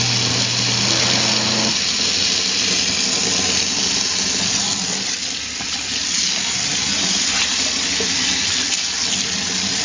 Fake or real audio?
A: real